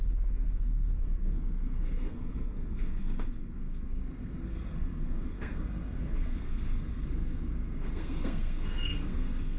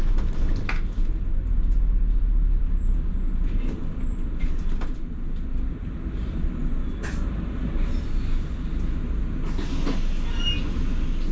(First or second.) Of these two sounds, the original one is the second